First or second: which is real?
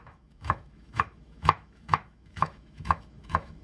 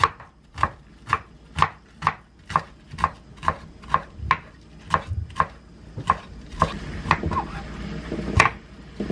second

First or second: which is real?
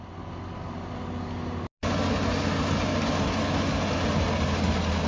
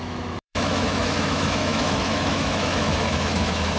first